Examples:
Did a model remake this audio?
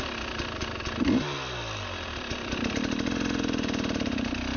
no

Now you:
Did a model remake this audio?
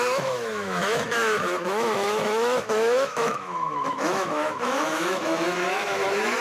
yes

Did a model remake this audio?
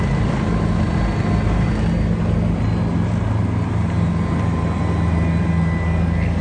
no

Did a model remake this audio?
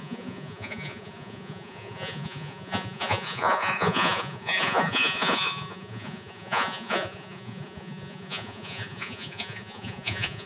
yes